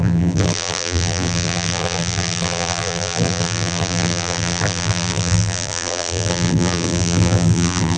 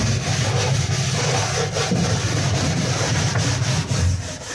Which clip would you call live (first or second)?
second